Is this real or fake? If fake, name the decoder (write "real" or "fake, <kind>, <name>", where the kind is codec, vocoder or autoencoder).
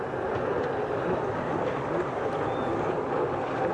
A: real